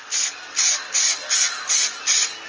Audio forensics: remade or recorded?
recorded